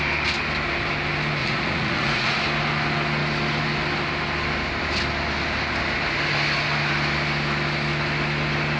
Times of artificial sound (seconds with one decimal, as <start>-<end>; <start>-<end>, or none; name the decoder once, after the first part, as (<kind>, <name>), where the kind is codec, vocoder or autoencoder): 1.4-2.4 (vocoder, Vocos)